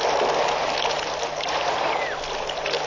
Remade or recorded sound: recorded